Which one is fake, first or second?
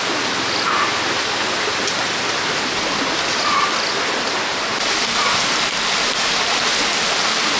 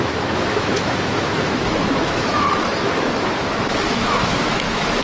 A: second